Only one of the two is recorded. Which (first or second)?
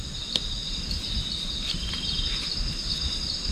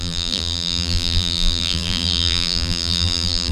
first